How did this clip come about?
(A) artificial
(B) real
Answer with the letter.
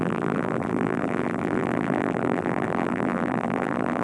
A